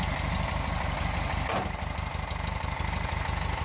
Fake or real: real